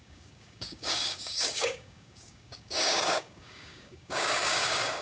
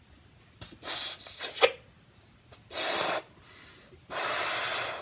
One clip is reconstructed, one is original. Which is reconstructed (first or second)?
first